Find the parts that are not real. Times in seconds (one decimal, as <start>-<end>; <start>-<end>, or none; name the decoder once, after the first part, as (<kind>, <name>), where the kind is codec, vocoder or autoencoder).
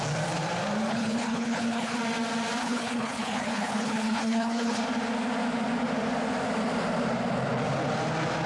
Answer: 0.9-2.0 (codec, HILCodec); 2.6-4.8